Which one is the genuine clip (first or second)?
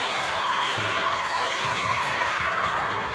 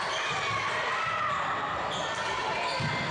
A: second